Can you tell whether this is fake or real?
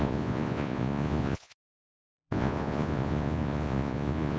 fake